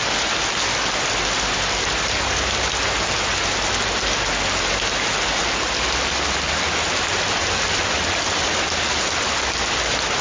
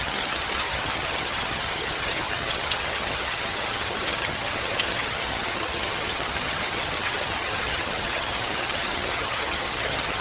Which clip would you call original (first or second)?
first